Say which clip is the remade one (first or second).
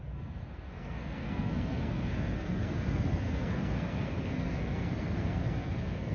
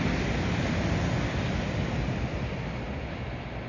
first